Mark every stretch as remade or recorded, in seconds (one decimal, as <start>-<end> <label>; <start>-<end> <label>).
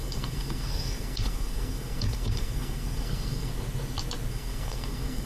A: 0.0-3.5 remade; 3.5-4.3 recorded; 4.3-5.3 remade